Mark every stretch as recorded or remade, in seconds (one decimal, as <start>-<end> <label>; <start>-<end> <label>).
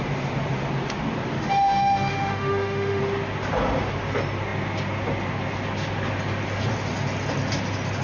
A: 0.0-1.3 recorded; 1.3-3.0 remade; 3.0-8.0 recorded